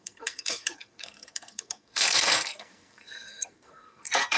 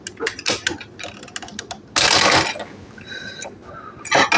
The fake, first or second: first